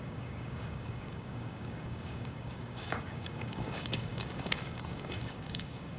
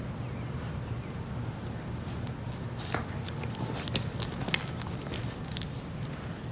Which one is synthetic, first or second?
first